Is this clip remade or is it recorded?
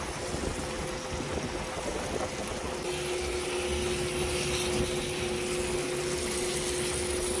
recorded